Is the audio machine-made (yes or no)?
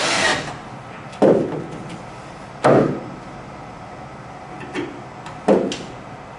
no